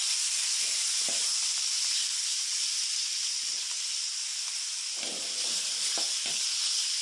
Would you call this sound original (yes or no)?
no